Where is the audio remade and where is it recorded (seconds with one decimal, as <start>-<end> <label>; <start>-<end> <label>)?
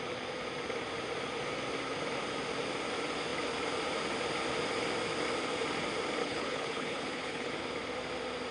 0.0-6.2 recorded; 6.2-7.5 remade; 7.5-8.5 recorded